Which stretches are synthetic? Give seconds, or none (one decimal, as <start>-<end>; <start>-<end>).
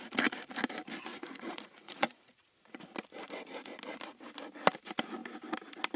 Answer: 1.1-2.8